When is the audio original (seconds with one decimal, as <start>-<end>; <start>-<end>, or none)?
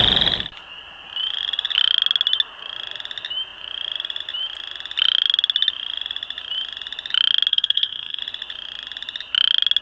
0.0-7.5; 8.2-9.8